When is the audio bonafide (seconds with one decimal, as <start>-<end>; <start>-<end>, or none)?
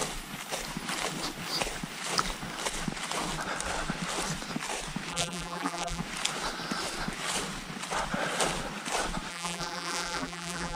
0.0-5.1; 6.0-9.3